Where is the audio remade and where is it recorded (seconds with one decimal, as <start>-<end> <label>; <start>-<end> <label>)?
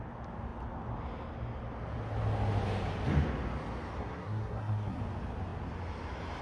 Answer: 0.0-4.0 recorded; 4.0-5.0 remade; 5.0-6.4 recorded